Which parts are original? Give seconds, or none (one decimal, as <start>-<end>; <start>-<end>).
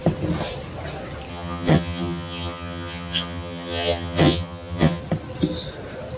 0.0-1.3; 5.0-6.2